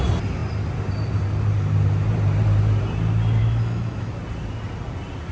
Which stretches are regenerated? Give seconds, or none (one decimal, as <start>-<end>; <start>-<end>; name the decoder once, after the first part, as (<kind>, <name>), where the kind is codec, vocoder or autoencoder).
3.4-4.1 (autoencoder, DAC-VAE)

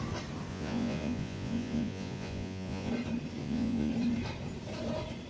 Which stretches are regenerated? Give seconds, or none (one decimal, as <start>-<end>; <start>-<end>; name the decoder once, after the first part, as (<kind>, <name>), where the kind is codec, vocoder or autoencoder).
0.5-2.9 (vocoder, Vocos); 3.4-3.9

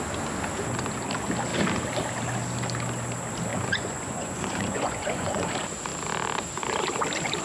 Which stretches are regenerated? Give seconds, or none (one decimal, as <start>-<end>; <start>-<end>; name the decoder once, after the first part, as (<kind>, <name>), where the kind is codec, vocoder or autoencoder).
3.5-5.5 (vocoder, Vocos)

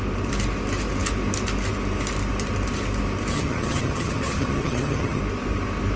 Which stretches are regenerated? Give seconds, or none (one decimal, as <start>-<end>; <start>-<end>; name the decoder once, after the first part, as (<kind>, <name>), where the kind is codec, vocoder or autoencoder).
3.3-5.2 (vocoder, HiFi-GAN)

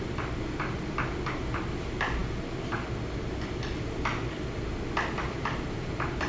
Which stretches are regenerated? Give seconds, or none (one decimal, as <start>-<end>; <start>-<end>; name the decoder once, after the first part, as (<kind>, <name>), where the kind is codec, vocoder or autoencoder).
none

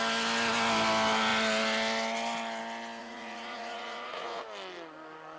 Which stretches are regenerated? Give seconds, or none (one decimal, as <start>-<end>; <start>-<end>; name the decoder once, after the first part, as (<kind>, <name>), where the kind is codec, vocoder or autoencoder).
3.0-4.4 (vocoder, Vocos)

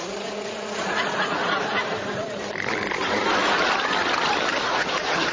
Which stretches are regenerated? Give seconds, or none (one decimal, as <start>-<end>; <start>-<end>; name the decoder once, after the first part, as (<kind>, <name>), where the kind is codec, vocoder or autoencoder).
0.0-1.4 (vocoder, Vocos); 4.6-5.3